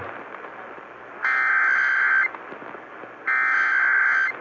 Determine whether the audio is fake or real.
real